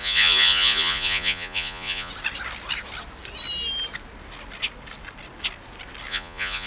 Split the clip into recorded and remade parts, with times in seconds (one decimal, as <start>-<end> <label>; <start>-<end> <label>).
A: 0.0-2.1 remade; 2.1-6.1 recorded; 6.1-6.7 remade